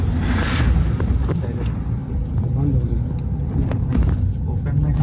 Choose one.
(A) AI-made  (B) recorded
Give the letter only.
B